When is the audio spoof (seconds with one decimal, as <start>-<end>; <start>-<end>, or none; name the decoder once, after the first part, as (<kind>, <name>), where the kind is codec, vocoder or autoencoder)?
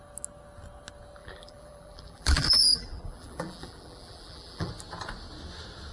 1.2-4.7 (vocoder, BigVGAN v2)